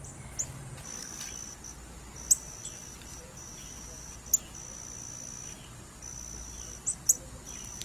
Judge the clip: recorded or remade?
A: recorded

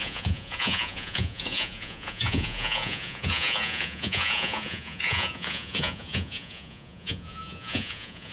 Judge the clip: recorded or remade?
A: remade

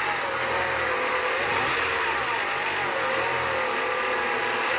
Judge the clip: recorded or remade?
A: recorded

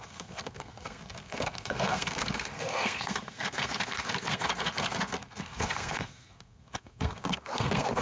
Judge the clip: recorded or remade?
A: remade